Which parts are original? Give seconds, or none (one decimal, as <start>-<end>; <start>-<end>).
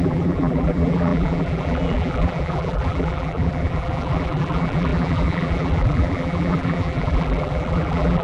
none